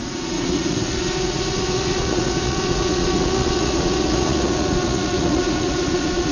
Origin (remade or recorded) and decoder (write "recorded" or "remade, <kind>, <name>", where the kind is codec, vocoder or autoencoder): remade, vocoder, Vocos